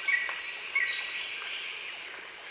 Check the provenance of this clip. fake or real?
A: real